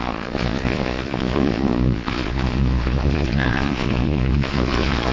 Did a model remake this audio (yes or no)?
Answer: yes